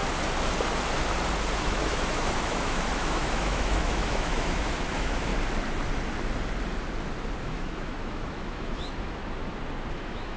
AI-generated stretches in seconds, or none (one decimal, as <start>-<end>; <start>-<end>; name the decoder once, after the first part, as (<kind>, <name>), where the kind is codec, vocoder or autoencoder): 1.6-5.3 (autoencoder, DAC-VAE); 7.4-9.2; 9.9-10.4